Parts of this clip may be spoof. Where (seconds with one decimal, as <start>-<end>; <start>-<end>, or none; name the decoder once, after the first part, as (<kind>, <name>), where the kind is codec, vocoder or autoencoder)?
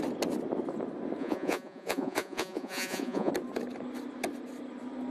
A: 1.2-3.3 (vocoder, Vocos)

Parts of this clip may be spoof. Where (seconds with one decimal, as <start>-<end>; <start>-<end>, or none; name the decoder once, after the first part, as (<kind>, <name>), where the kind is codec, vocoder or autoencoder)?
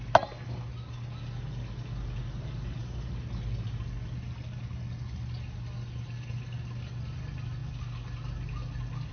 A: none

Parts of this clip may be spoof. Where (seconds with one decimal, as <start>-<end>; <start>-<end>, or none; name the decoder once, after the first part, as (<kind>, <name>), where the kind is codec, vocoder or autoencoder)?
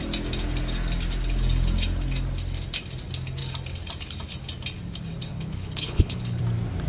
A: 5.3-6.4 (codec, HILCodec)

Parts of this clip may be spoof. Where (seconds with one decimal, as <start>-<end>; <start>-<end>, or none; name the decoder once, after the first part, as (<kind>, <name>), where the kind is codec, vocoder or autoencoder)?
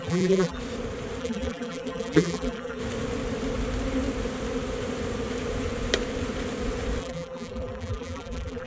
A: 0.0-0.6 (vocoder, BigVGAN v2); 1.2-2.8; 7.0-8.7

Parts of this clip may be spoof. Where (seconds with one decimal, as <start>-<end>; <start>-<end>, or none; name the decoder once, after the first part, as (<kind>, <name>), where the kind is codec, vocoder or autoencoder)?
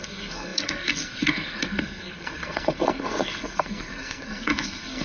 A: 0.0-5.0 (codec, SNAC)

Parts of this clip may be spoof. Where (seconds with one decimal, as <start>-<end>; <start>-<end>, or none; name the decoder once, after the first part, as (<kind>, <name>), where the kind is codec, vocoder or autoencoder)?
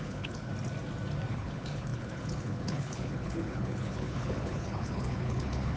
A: 0.0-0.5 (codec, HILCodec); 1.3-5.8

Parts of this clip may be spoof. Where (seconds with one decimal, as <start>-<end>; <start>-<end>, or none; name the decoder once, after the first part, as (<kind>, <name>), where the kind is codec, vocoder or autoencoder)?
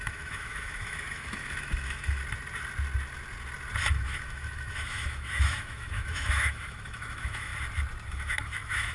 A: 0.0-2.2 (autoencoder, DAC-VAE); 3.9-7.5; 8.1-8.9